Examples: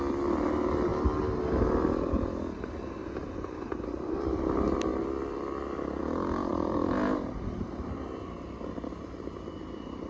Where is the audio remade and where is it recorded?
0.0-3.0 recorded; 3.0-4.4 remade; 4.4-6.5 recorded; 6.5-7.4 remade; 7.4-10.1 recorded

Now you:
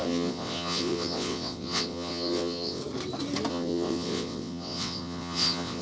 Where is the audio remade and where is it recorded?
0.0-2.8 remade; 2.8-3.5 recorded; 3.5-5.8 remade

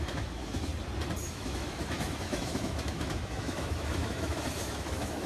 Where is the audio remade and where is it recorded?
0.0-0.7 remade; 0.7-1.3 recorded; 1.3-5.3 remade

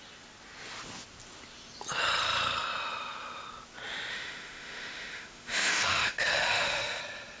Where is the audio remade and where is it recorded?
0.0-4.1 recorded; 4.1-7.0 remade; 7.0-7.4 recorded

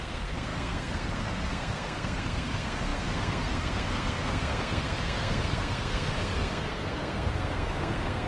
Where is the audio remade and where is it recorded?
0.0-8.3 remade